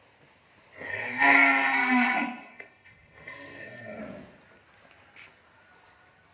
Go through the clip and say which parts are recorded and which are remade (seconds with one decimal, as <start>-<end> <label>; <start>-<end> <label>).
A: 0.0-0.9 recorded; 0.9-4.0 remade; 4.0-6.3 recorded